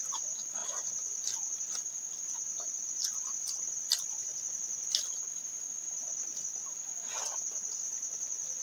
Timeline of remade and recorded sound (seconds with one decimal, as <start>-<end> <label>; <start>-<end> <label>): 0.0-8.6 recorded